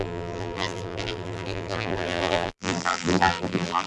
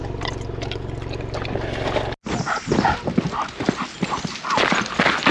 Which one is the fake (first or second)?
first